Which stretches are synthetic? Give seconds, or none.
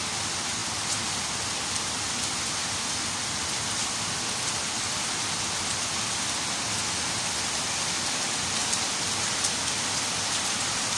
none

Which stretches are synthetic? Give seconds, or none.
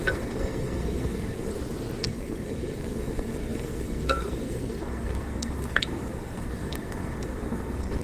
0.0-1.5 (codec, SNAC); 2.0-8.0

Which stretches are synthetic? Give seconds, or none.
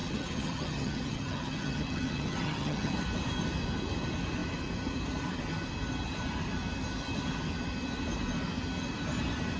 0.0-2.9 (vocoder, HiFi-GAN)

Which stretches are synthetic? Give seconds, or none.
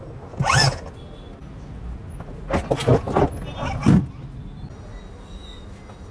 none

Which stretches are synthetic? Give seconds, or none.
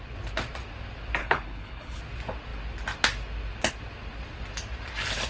1.2-2.0 (codec, HILCodec)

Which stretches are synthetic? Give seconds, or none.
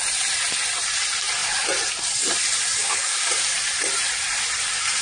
2.8-3.3 (codec, DAC)